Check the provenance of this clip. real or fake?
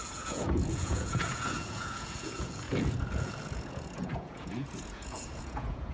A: fake